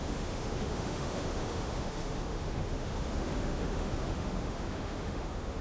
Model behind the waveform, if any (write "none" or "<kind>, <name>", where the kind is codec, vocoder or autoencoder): autoencoder, DAC-VAE